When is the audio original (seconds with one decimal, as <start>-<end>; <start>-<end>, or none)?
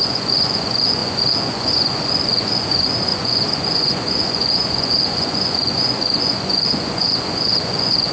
none